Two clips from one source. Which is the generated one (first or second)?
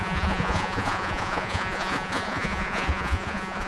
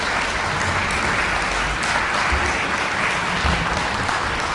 first